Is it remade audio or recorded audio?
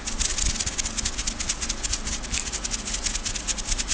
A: recorded